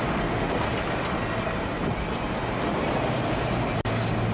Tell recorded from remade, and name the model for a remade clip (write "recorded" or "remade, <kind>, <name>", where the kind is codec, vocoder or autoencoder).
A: recorded